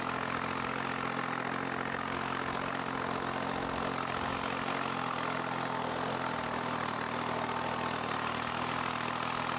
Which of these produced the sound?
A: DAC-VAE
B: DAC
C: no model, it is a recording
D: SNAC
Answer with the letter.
C